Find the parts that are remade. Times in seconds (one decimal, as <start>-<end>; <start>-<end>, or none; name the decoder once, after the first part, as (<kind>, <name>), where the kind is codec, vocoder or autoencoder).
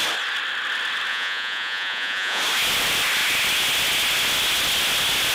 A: 1.1-2.4 (vocoder, Vocos)